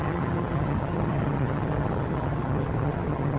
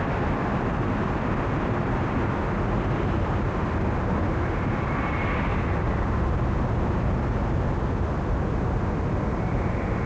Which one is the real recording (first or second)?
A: second